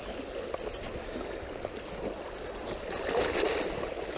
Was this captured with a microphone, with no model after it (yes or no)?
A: yes